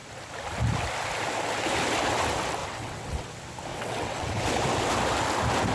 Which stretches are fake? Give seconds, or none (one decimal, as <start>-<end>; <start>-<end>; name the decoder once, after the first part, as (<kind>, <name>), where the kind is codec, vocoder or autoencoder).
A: 2.6-3.3 (vocoder, WaveNeXt); 3.7-4.4